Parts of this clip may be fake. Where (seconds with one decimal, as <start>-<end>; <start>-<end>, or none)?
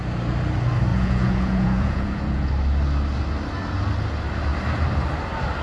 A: 0.9-2.5